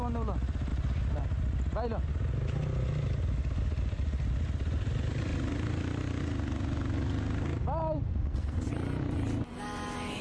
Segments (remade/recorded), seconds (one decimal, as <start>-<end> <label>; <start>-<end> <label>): 0.0-8.1 recorded; 8.1-8.7 remade; 8.7-10.2 recorded